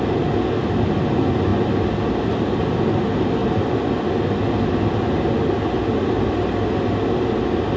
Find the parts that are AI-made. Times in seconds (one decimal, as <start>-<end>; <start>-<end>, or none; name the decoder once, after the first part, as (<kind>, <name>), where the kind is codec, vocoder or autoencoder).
3.4-3.9 (vocoder, BigVGAN v2)